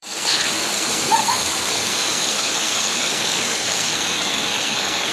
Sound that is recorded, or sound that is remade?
remade